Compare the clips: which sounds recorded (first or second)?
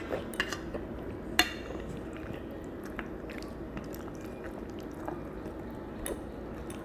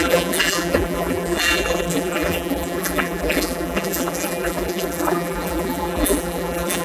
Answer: first